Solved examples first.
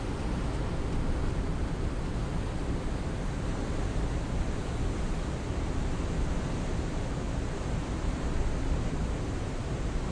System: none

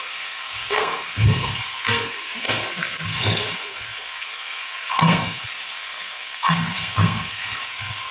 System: codec, SNAC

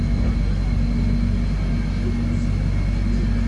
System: none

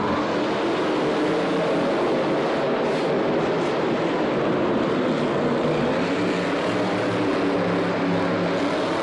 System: none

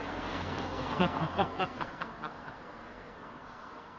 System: codec, SNAC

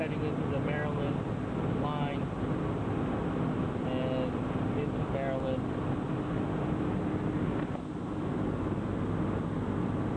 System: none